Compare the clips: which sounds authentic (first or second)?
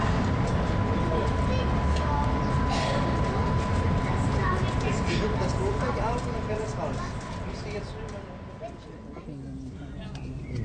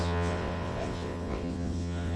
first